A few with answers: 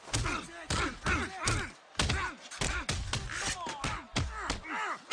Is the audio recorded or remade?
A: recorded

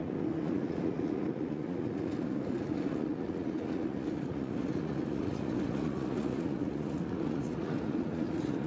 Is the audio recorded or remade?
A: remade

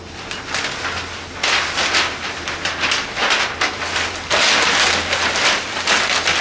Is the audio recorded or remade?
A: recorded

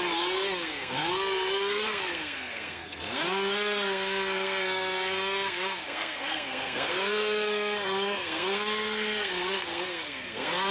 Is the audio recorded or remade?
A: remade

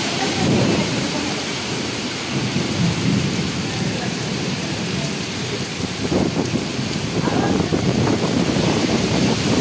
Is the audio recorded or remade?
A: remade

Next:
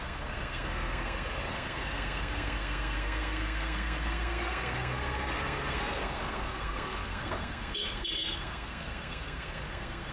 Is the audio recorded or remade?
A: remade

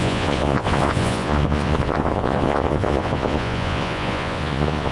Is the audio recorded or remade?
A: remade